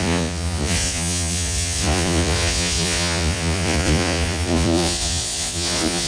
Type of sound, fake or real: fake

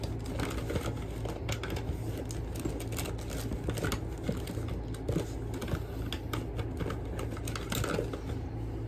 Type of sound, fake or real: real